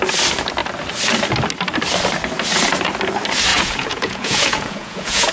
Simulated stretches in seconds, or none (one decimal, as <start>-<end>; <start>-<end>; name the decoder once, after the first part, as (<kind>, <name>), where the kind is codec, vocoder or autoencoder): 3.5-5.3 (vocoder, Vocos)